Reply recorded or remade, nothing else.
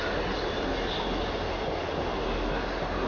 recorded